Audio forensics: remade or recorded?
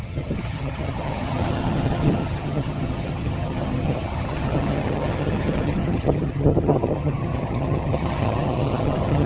remade